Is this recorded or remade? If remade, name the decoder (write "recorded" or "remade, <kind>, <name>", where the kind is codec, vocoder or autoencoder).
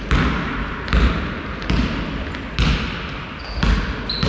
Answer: recorded